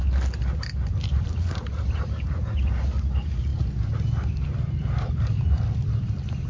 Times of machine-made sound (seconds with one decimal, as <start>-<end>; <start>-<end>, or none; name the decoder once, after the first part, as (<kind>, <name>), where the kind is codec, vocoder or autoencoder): 1.1-2.0 (vocoder, BigVGAN v2); 3.5-6.1